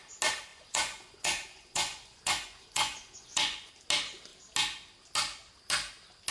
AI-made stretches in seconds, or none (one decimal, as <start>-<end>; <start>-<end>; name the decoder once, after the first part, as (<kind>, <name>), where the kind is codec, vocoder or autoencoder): 0.5-3.7 (vocoder, Vocos)